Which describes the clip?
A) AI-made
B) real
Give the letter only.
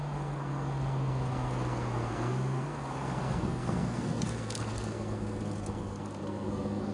A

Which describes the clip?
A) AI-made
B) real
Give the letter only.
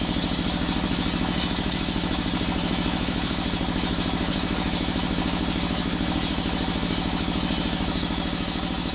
A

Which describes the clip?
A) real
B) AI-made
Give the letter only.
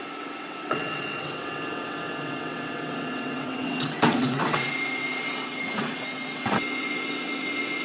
B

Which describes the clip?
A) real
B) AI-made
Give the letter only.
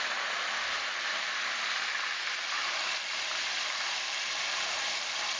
B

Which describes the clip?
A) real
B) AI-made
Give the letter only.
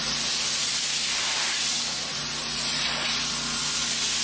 A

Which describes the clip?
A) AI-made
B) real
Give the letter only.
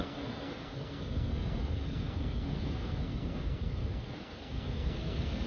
A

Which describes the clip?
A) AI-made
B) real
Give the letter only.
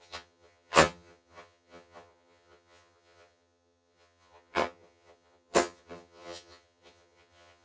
A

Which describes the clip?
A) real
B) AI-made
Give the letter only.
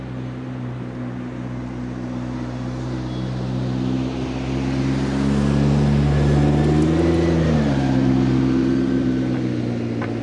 A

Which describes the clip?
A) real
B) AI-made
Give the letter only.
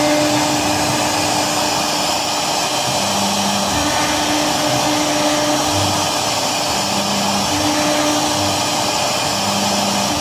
A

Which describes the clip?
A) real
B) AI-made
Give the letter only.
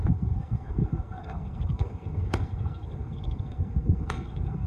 B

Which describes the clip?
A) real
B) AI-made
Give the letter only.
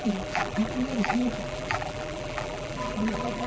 B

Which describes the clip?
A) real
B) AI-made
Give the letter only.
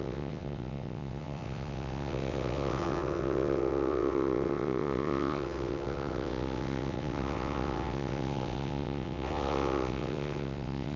B